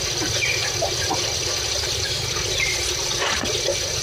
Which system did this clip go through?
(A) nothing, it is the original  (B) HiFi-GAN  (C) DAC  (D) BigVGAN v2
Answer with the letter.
A